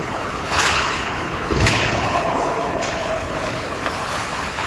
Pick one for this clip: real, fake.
fake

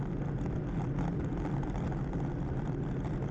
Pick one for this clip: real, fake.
real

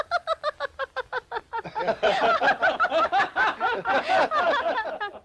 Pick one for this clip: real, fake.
real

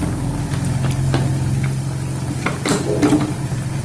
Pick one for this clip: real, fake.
real